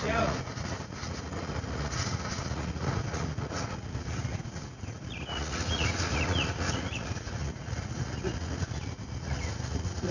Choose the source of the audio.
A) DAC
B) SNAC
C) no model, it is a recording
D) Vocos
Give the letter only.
D